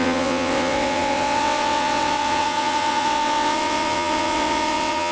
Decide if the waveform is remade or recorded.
remade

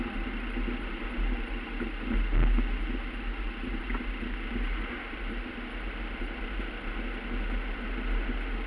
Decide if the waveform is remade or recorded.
recorded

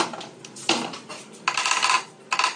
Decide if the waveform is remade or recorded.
recorded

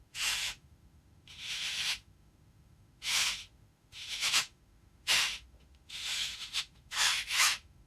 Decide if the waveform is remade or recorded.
remade